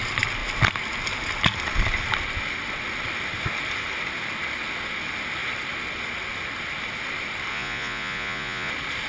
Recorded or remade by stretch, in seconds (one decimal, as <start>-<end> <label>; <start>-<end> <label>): 0.0-7.5 recorded; 7.5-8.7 remade; 8.7-9.1 recorded